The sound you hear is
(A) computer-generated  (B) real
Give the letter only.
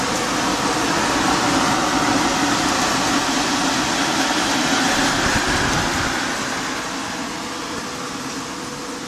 B